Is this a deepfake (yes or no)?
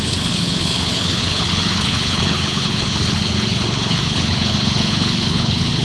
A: yes